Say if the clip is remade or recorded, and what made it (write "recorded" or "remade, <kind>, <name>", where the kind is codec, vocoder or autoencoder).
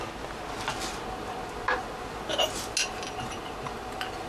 recorded